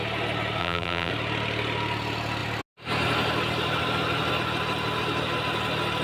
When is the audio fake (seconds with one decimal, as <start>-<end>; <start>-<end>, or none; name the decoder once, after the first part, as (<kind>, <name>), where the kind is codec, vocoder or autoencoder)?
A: 0.6-1.1 (vocoder, BigVGAN v2)